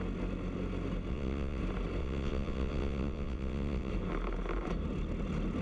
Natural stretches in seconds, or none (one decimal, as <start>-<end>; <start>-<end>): 0.0-1.1; 1.6-2.0; 3.9-5.6